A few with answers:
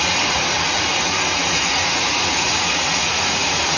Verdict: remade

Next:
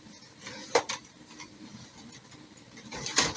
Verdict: recorded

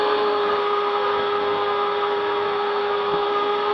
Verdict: remade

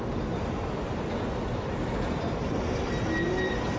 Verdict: recorded